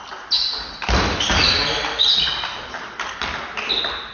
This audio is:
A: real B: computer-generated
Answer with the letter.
A